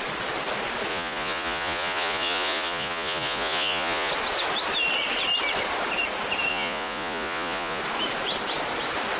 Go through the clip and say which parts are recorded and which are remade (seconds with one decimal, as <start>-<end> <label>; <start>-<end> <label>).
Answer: 0.0-0.9 recorded; 0.9-4.1 remade; 4.1-6.5 recorded; 6.5-7.8 remade; 7.8-9.2 recorded